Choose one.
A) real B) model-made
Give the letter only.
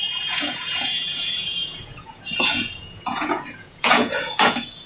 B